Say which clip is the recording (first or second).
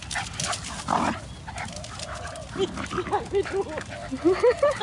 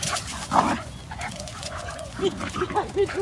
first